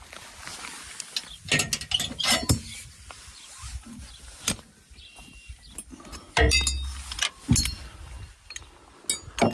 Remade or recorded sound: recorded